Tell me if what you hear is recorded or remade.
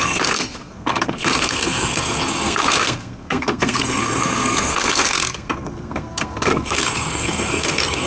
remade